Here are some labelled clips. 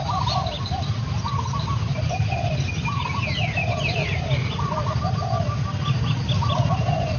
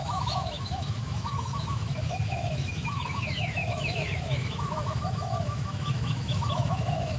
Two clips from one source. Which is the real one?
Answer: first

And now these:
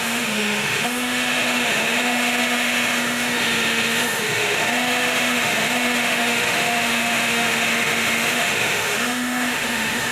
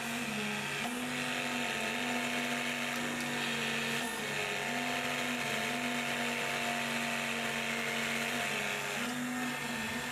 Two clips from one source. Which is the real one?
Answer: second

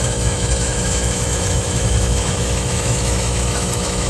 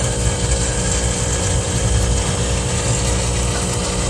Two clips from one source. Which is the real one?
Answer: second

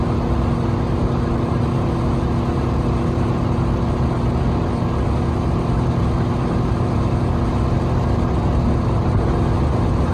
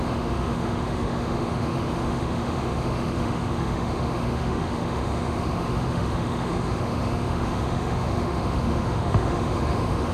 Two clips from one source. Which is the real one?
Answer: first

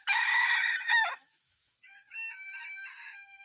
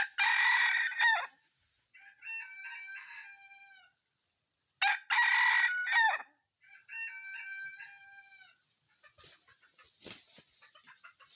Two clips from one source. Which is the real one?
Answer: second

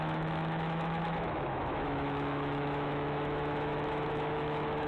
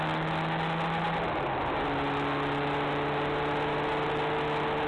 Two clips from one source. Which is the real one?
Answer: second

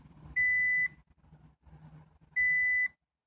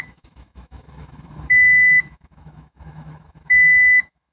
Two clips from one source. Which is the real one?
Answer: first